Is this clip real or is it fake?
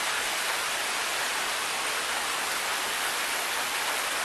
real